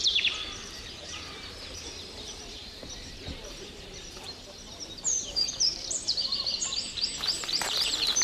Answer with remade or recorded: remade